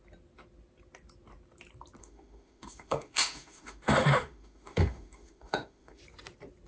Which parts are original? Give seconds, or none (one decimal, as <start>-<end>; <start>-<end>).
0.0-2.0; 6.0-6.7